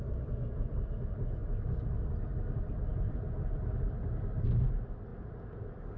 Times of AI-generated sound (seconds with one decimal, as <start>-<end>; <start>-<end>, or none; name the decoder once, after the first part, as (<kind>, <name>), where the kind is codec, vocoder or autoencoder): none